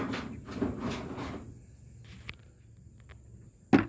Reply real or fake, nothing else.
real